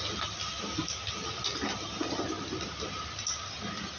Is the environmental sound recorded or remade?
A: recorded